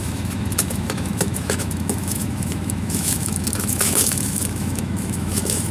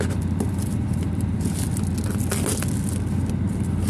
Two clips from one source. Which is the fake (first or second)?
first